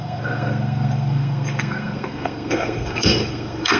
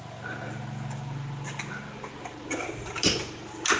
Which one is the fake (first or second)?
first